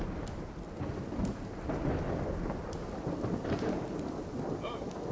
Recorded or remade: recorded